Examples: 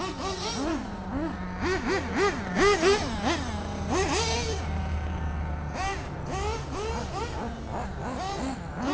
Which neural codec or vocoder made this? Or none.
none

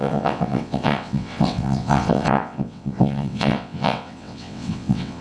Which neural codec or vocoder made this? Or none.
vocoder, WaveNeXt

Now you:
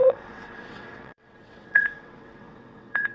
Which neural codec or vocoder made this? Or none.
vocoder, WaveNeXt